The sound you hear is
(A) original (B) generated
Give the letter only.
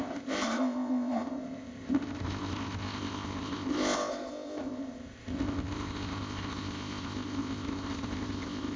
B